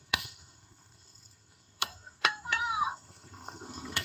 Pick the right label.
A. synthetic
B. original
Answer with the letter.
A